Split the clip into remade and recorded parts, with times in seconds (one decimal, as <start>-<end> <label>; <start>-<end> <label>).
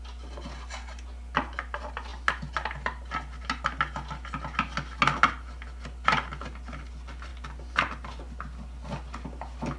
0.0-9.8 recorded